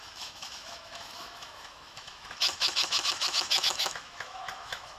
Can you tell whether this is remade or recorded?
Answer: remade